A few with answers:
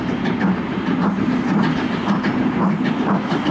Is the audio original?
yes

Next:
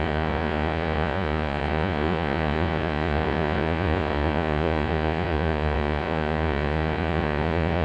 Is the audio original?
no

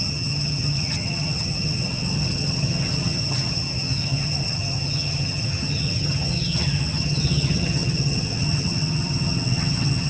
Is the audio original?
no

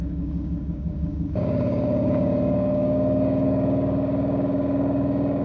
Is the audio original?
no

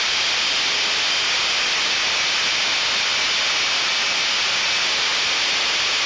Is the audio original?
yes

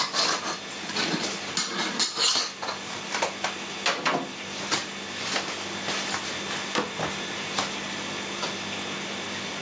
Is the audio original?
yes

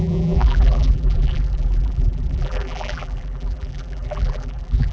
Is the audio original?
no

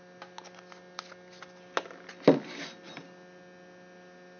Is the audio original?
yes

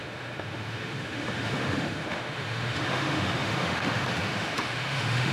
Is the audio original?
no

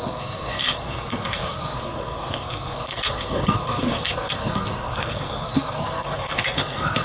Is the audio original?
no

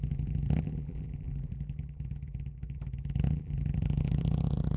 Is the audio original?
no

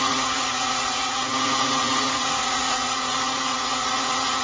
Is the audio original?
no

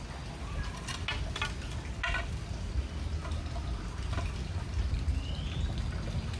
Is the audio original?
yes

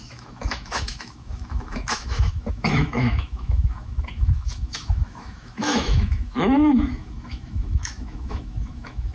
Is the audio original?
no